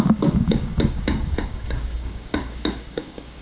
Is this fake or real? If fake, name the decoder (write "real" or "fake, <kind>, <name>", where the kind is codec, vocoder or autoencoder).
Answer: fake, codec, DAC